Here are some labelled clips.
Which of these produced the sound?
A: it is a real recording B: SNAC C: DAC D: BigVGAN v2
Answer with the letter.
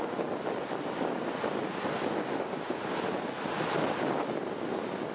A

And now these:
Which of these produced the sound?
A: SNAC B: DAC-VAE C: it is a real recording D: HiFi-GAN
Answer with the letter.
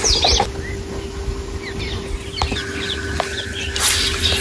C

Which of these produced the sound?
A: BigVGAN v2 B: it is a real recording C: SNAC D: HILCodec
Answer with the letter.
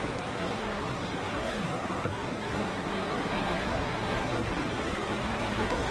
C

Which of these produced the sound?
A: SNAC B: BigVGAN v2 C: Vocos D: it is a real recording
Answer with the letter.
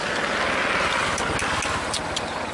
D